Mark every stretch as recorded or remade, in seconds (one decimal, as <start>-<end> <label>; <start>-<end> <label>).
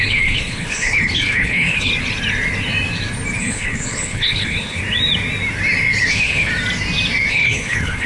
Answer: 0.0-1.9 remade; 1.9-3.4 recorded; 3.4-4.8 remade; 4.8-6.1 recorded; 6.1-6.5 remade; 6.5-7.3 recorded; 7.3-8.1 remade